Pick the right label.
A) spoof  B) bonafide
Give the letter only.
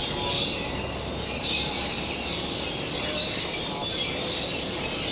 A